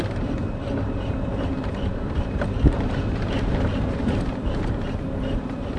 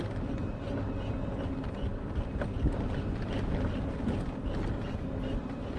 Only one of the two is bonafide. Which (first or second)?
second